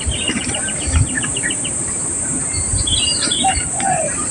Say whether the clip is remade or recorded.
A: remade